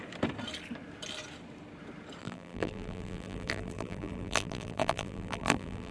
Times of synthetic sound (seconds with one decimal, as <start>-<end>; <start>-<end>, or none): 2.2-5.9